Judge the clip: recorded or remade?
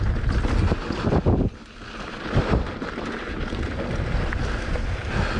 recorded